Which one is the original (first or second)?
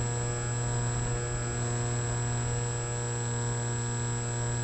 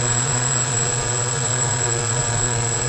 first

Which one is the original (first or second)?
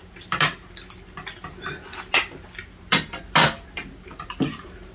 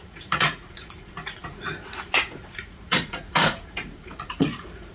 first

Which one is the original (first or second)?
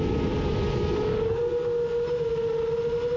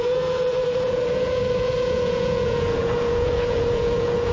first